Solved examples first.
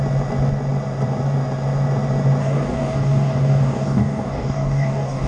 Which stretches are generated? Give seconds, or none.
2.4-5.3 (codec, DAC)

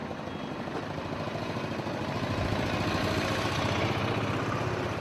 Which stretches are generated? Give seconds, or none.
3.0-5.0 (vocoder, BigVGAN v2)

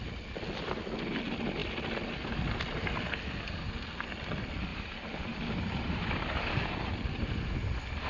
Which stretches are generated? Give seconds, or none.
4.7-8.1 (vocoder, BigVGAN v2)

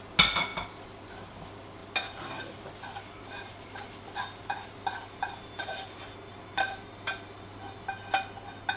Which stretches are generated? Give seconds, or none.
none

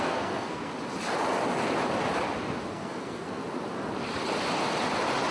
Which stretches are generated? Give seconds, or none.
0.0-0.7 (codec, SNAC); 2.7-3.4

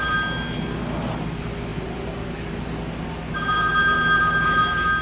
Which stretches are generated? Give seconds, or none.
none

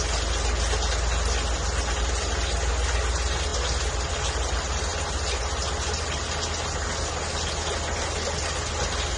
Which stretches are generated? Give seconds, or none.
none

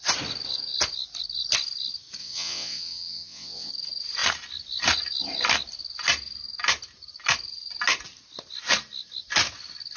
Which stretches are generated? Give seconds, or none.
2.2-3.7 (vocoder, WaveNeXt)